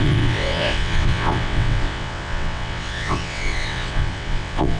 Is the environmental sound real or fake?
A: fake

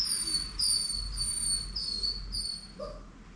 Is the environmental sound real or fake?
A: real